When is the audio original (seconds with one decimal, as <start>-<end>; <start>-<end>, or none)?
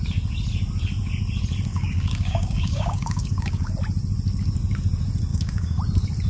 0.0-1.7; 3.7-5.3; 5.8-6.3